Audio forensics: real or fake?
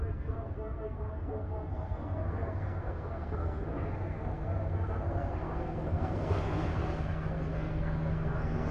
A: fake